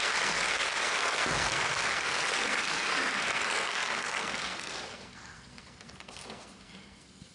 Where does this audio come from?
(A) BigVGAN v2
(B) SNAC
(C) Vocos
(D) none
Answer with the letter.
B